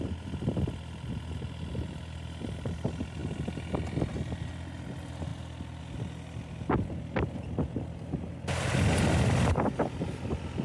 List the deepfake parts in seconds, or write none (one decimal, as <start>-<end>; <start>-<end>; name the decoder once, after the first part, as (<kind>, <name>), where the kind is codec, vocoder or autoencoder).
5.3-5.8 (vocoder, BigVGAN v2)